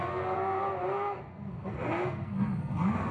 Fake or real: fake